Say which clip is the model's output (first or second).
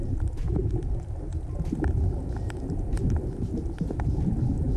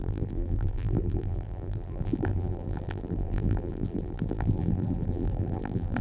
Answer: second